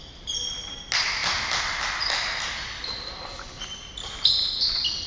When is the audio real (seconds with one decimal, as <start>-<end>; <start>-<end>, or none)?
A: 0.0-5.1